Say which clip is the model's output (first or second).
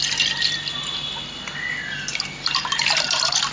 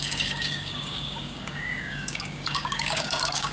second